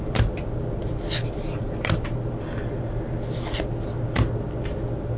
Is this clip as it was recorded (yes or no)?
yes